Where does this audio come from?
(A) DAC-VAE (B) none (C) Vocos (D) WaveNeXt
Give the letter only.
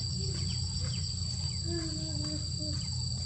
B